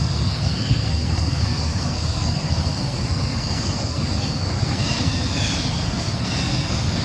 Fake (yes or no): yes